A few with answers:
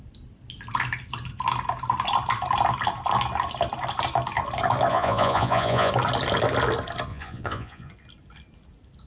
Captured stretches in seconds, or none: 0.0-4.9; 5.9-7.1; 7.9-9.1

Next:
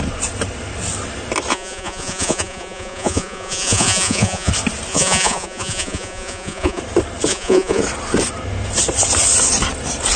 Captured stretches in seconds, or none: 0.0-1.5; 4.5-4.9; 6.8-7.3; 7.8-10.2

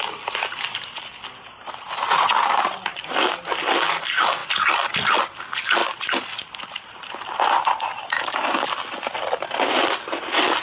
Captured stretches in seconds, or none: 0.0-10.6

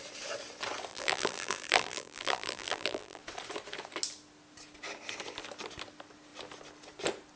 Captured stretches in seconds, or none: 0.0-0.9; 3.2-7.4

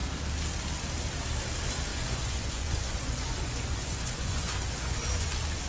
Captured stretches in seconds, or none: 0.0-1.9; 5.3-5.7

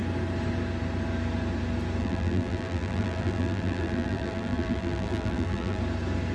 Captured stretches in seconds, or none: 0.0-2.0; 5.8-6.3